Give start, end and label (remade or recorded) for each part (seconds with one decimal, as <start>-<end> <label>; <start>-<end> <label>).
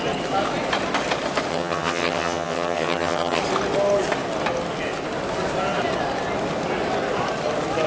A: 0.0-1.5 recorded; 1.5-3.4 remade; 3.4-7.9 recorded